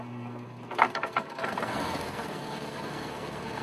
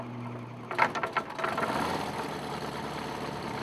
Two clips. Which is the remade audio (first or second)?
first